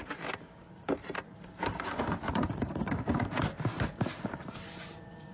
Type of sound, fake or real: fake